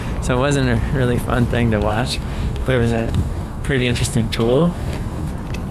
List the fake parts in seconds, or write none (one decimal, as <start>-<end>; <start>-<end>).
1.9-5.3